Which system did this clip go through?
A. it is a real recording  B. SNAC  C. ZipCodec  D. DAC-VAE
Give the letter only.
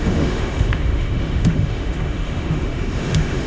D